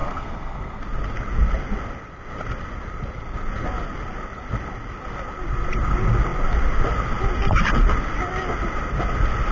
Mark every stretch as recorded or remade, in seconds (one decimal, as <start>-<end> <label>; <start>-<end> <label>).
0.0-0.8 remade; 0.8-9.5 recorded